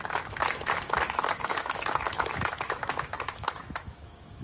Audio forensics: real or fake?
fake